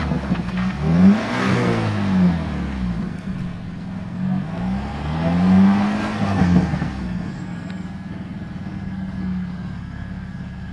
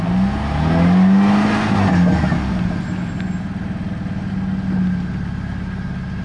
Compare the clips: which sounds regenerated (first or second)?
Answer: first